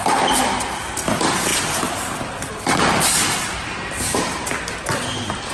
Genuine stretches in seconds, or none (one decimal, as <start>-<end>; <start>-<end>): 0.0-5.5